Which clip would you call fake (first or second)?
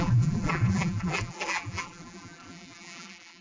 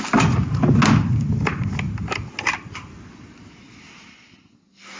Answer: first